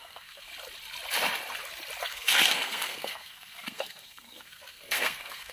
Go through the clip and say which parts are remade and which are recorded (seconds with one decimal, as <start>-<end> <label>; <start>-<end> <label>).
0.0-0.5 remade; 0.5-2.0 recorded; 2.0-5.5 remade